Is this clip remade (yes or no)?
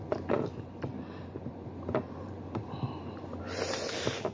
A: yes